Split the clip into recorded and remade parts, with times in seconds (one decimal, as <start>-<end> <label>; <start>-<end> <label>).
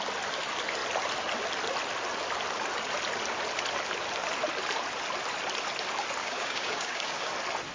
0.0-6.2 recorded; 6.2-7.3 remade; 7.3-7.7 recorded